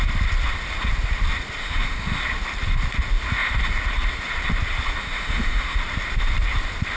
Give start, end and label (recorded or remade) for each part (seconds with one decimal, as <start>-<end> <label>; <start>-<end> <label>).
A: 0.0-1.6 recorded; 1.6-2.2 remade; 2.2-5.0 recorded; 5.0-5.8 remade; 5.8-7.0 recorded